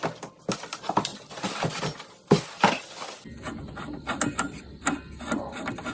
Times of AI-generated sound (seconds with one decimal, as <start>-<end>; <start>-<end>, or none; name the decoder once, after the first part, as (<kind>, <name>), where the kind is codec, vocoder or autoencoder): none